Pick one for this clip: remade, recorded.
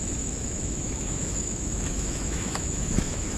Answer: remade